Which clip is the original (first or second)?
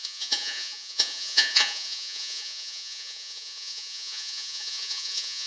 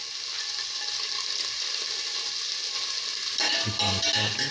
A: second